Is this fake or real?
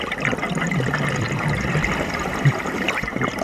real